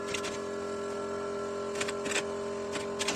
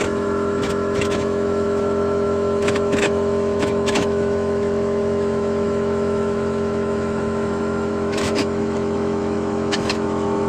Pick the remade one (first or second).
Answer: second